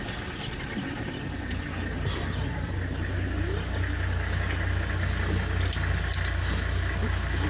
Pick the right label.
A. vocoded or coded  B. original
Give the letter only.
B